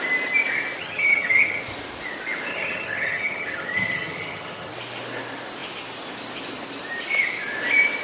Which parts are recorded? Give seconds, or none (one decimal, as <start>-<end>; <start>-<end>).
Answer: 0.0-0.8; 1.6-2.5; 4.7-8.0